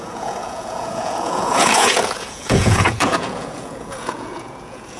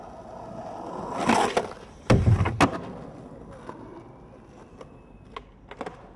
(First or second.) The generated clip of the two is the first